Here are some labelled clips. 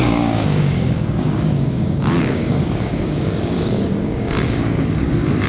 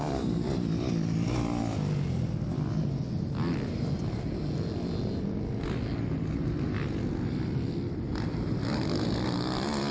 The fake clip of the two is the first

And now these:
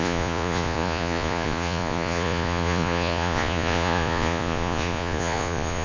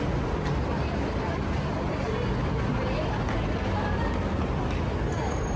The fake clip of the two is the first